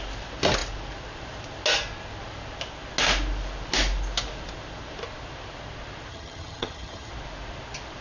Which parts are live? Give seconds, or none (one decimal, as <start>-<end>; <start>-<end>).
0.0-6.1; 7.1-8.0